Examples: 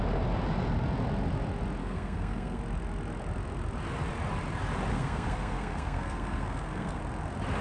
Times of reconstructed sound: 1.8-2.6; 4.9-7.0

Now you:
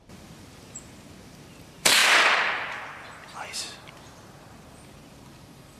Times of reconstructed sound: 0.0-5.8

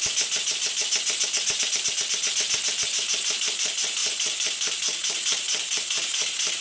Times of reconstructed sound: none

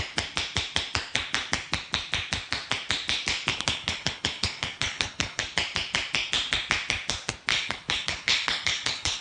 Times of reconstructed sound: 3.5-5.4; 7.5-9.2

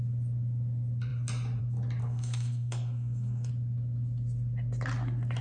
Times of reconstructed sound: 2.0-3.5

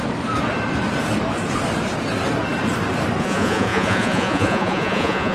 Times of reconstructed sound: 3.2-5.3

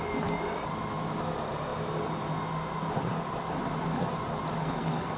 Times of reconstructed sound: 4.6-5.2

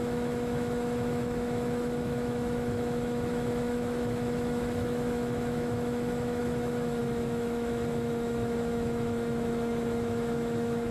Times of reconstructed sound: 0.0-10.9